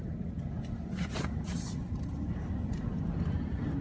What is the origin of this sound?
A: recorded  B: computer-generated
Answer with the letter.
A